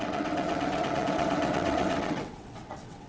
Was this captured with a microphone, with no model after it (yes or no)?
no